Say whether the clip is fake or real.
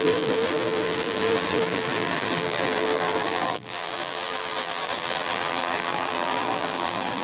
fake